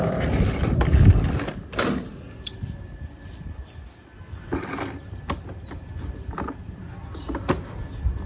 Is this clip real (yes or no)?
yes